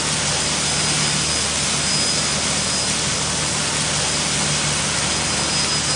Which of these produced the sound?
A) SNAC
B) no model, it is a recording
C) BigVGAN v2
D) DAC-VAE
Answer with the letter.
B